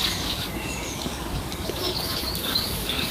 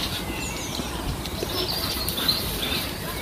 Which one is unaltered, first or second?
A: second